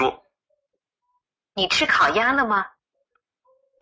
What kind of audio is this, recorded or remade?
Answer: recorded